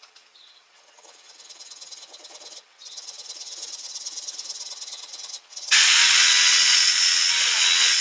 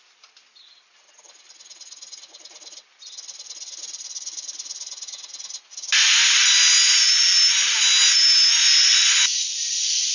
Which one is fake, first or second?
first